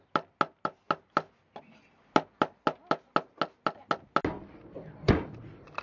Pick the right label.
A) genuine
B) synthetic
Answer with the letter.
A